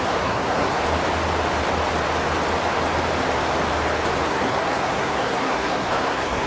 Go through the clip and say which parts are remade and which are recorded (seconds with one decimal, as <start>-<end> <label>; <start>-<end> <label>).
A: 0.0-0.8 remade; 0.8-4.3 recorded; 4.3-6.5 remade